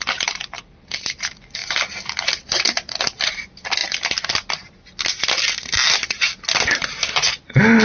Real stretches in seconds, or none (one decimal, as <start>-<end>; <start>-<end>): 0.0-7.8